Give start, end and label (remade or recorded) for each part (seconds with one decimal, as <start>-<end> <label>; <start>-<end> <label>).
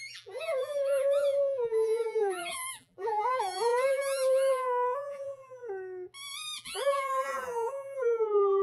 0.0-5.6 remade; 5.6-6.6 recorded; 6.6-8.6 remade